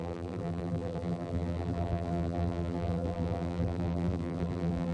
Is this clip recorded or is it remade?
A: remade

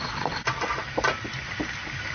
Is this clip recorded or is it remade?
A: recorded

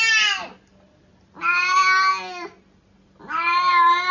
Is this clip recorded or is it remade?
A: recorded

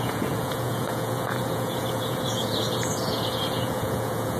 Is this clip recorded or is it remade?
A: remade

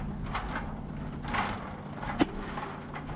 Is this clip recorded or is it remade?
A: recorded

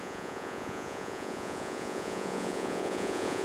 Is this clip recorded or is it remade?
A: remade